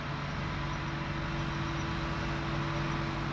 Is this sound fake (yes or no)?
no